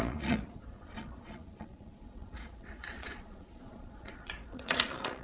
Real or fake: fake